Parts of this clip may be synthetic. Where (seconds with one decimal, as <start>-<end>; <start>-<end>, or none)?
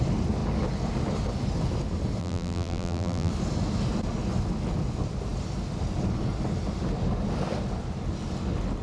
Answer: 2.2-3.3